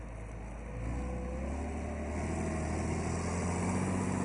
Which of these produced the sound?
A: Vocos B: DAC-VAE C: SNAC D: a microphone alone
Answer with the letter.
D